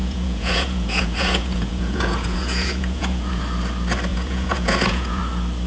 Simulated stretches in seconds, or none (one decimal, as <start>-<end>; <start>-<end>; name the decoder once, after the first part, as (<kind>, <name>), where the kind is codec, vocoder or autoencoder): 0.0-3.4 (vocoder, Vocos); 4.1-5.2